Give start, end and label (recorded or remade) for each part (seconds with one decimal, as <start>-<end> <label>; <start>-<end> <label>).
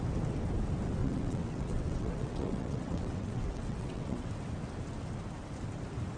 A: 0.0-1.0 recorded; 1.0-4.3 remade; 4.3-6.2 recorded